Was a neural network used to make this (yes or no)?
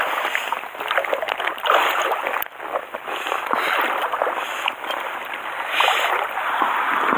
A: no